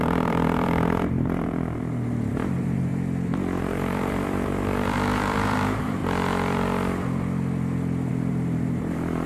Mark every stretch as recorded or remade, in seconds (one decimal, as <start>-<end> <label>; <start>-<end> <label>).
0.0-2.9 remade; 2.9-3.6 recorded; 3.6-6.0 remade; 6.0-8.1 recorded; 8.1-9.3 remade